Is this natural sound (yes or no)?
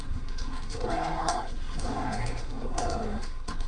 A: no